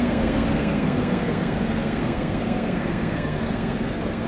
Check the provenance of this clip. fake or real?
fake